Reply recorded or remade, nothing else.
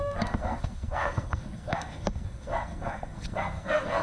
remade